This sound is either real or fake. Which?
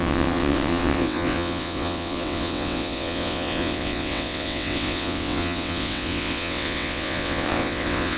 fake